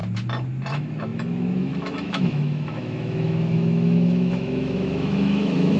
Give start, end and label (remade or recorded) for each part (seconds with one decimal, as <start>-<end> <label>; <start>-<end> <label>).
0.0-0.7 recorded; 0.7-5.8 remade